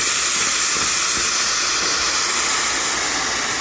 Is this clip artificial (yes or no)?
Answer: no